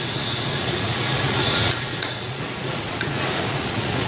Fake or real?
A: fake